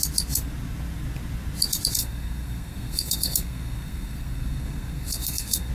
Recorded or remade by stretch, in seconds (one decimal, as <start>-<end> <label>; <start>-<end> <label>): 0.0-2.0 recorded; 2.0-5.7 remade